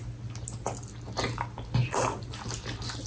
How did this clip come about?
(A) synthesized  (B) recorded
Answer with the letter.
B